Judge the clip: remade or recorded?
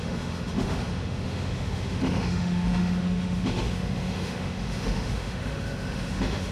remade